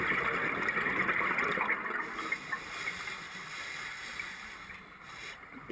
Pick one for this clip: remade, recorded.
recorded